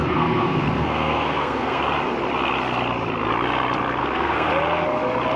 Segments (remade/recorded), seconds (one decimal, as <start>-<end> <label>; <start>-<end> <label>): 0.0-1.8 remade; 1.8-4.0 recorded; 4.0-4.5 remade; 4.5-5.4 recorded